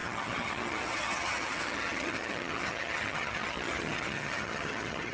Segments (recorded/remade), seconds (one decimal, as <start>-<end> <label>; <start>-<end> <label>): 0.0-5.1 remade